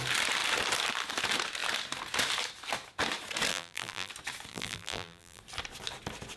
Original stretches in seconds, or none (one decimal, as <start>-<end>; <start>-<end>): 0.0-3.5; 4.1-4.5; 5.4-6.4